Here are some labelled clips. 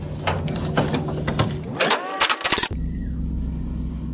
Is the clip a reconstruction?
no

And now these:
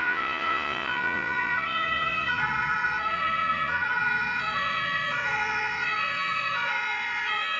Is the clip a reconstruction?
yes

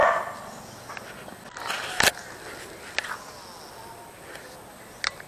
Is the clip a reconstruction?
no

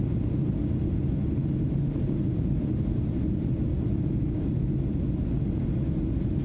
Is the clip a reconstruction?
no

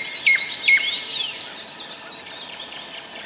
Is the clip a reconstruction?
no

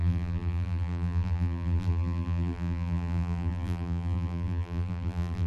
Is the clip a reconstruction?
yes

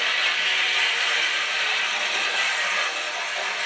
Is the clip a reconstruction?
no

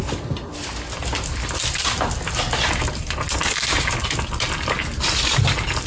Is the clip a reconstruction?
no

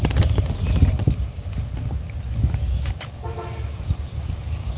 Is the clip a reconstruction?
no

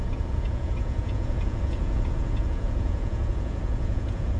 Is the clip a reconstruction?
yes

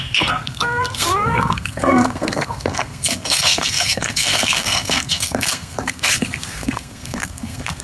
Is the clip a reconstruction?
yes